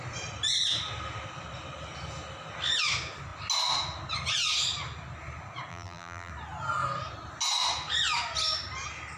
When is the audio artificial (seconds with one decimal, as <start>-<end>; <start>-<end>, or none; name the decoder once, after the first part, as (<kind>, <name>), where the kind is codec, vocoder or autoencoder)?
5.7-6.3 (vocoder, BigVGAN v2)